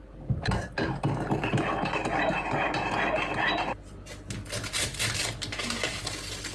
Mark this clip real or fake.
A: real